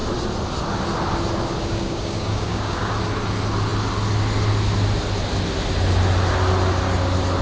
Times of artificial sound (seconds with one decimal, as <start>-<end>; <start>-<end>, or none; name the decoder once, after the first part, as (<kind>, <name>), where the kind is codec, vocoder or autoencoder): 1.6-2.9 (codec, DAC)